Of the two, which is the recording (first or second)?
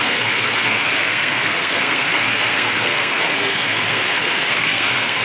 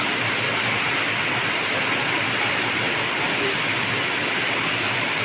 second